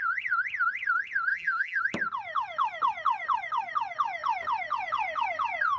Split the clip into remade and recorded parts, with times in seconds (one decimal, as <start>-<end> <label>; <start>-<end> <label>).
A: 0.0-1.3 recorded; 1.3-1.8 remade; 1.8-5.8 recorded